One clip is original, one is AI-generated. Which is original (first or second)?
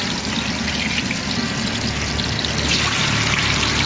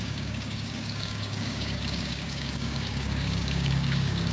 first